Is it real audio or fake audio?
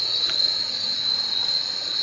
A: real